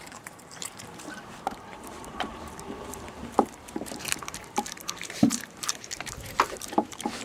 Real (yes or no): no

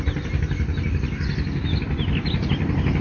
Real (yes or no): yes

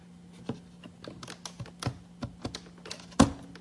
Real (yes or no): yes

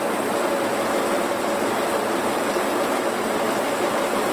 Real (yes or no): yes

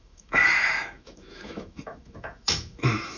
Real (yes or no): no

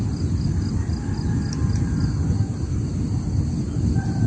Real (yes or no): yes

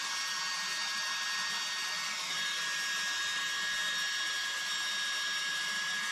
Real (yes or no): yes